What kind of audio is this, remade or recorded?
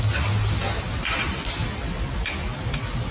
recorded